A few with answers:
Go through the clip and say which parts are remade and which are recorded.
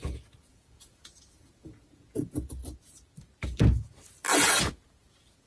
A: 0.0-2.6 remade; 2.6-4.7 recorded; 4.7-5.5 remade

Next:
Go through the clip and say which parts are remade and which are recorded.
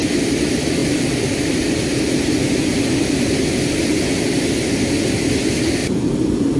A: 0.0-5.8 recorded; 5.8-6.6 remade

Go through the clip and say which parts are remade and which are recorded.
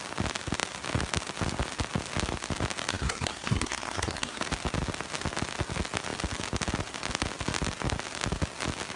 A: 0.0-2.9 recorded; 2.9-4.4 remade; 4.4-9.0 recorded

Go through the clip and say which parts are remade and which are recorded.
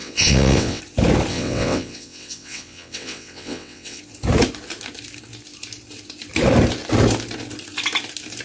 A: 0.0-0.8 remade; 0.8-1.3 recorded; 1.3-4.0 remade; 4.0-8.4 recorded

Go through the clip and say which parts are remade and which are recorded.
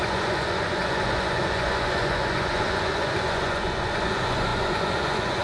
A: 0.0-5.4 remade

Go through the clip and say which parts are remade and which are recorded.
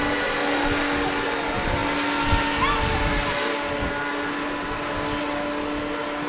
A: 0.0-6.3 recorded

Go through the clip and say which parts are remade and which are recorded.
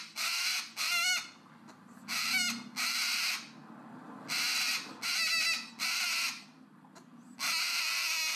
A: 0.0-8.4 recorded